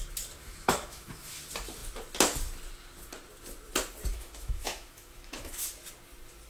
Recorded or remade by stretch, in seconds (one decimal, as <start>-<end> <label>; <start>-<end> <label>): 0.0-0.4 recorded; 0.4-1.4 remade; 1.4-4.1 recorded; 4.1-5.7 remade; 5.7-6.5 recorded